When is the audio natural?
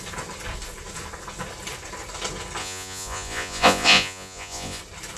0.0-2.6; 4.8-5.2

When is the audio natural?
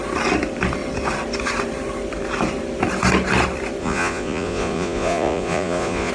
0.0-3.8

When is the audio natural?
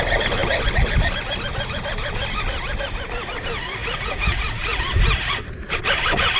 0.0-3.8; 4.8-6.4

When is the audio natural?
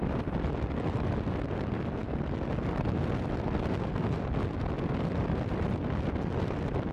0.0-6.9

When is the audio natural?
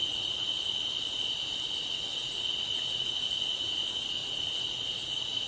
0.6-2.2; 3.8-4.2